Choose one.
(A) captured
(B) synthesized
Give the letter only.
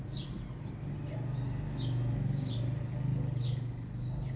A